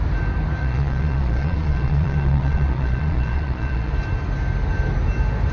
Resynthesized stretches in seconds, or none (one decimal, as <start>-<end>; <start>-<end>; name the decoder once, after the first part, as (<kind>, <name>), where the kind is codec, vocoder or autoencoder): 0.6-3.9 (vocoder, Vocos)